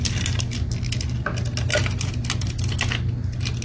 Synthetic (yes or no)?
no